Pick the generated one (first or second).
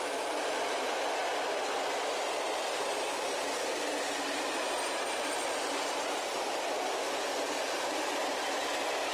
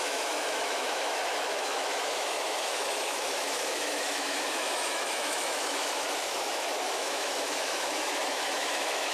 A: second